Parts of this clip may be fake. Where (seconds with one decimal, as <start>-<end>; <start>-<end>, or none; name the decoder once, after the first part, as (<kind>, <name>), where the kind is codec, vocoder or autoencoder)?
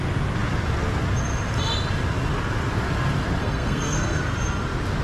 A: 3.4-4.2 (codec, SNAC)